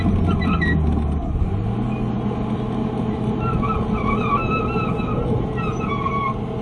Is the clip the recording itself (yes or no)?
yes